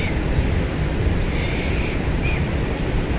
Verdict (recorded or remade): recorded